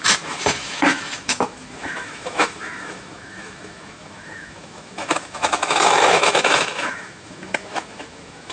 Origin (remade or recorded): remade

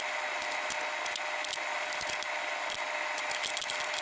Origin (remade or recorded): recorded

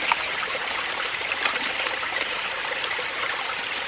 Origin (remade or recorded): remade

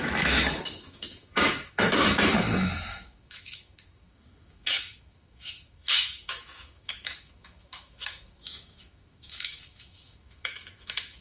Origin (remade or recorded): remade